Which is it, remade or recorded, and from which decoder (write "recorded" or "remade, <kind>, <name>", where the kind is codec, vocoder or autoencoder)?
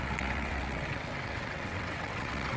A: remade, vocoder, WaveNeXt